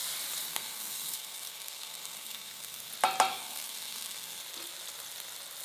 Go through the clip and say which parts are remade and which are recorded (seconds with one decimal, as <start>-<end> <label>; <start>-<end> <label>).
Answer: 0.0-0.5 recorded; 0.5-2.9 remade; 2.9-3.3 recorded; 3.3-4.4 remade; 4.4-5.6 recorded